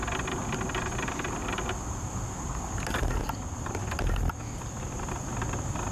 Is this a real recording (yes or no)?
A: yes